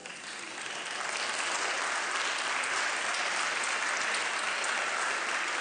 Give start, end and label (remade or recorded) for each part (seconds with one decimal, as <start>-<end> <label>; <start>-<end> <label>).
0.0-0.6 remade; 0.6-5.6 recorded